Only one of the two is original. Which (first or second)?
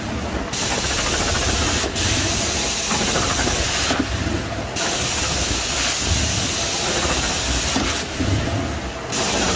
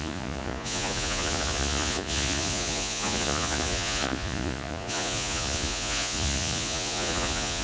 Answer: first